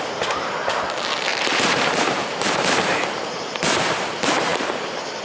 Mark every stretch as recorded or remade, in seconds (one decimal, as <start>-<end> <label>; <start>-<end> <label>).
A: 0.0-1.3 recorded; 1.3-3.5 remade; 3.5-4.5 recorded; 4.5-5.2 remade

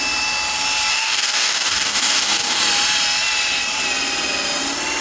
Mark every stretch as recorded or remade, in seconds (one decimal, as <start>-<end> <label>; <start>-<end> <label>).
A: 0.0-0.9 recorded; 0.9-2.6 remade; 2.6-5.0 recorded

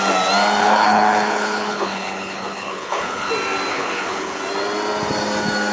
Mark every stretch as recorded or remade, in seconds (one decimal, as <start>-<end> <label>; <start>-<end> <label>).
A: 0.0-0.6 recorded; 0.6-3.3 remade; 3.3-3.7 recorded; 3.7-4.4 remade; 4.4-5.7 recorded